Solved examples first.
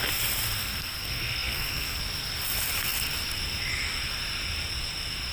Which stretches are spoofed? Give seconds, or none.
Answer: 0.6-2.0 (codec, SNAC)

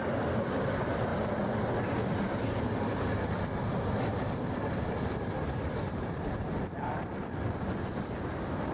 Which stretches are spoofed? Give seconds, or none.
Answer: none

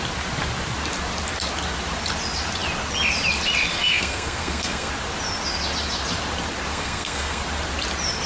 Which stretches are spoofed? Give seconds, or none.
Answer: 3.7-4.9 (codec, SNAC); 6.7-7.4

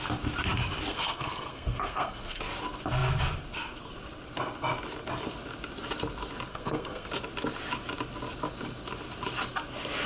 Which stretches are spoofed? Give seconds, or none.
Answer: 0.9-2.4 (codec, SNAC); 6.5-7.1

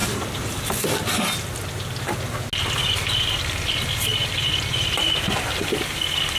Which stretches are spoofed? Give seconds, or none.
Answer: none

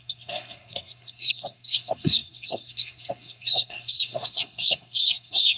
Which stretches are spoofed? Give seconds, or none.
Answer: 0.0-5.6 (codec, SNAC)

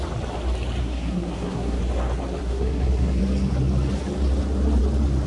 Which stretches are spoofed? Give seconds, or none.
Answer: 0.8-1.8 (codec, SNAC); 2.4-3.2

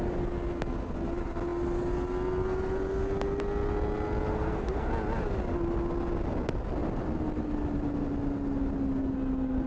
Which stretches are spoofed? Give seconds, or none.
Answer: 4.3-4.9 (codec, SNAC)